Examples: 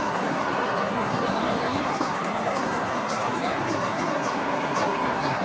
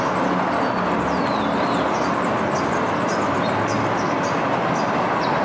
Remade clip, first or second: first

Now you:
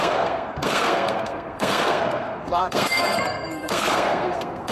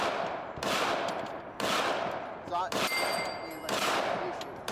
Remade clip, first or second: first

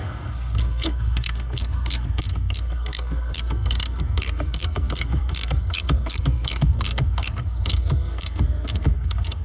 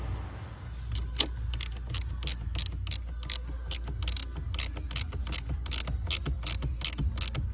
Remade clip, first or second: first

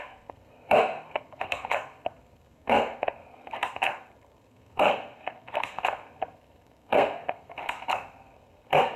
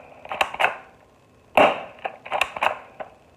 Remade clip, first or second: first